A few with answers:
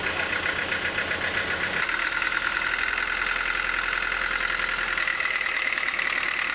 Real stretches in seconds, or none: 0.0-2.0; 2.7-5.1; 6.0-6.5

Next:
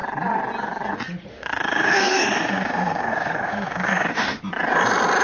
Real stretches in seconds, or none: 0.0-1.3; 4.4-5.2

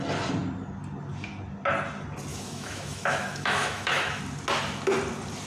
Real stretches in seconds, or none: 0.0-2.3; 4.2-5.5

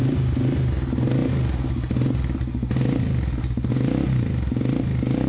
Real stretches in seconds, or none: 0.0-5.3

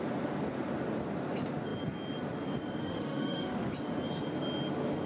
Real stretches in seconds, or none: 0.0-2.8; 3.7-5.1

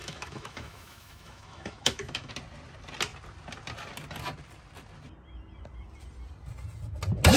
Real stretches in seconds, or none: 2.3-7.4